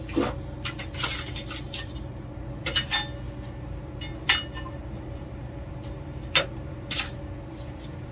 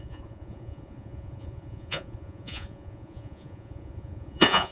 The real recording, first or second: first